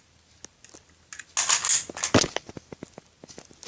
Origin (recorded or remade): recorded